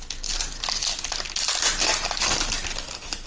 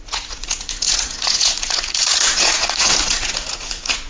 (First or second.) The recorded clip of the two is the first